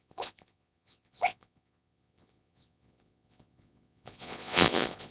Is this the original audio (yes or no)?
no